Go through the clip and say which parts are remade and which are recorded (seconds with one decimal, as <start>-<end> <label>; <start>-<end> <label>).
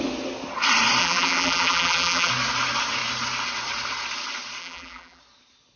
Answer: 0.0-1.0 recorded; 1.0-2.3 remade; 2.3-4.6 recorded; 4.6-5.2 remade; 5.2-5.8 recorded